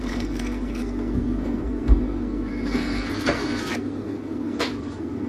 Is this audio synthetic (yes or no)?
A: yes